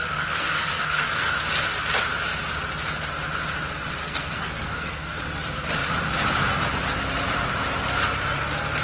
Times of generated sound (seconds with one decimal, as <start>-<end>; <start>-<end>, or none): 0.0-1.3; 4.0-5.2

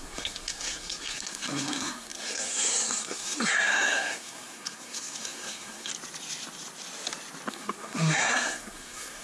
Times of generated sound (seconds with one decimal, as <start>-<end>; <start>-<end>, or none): 0.0-5.9; 7.5-9.2

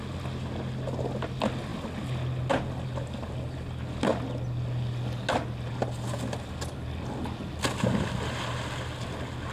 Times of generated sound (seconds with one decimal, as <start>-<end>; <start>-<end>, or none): none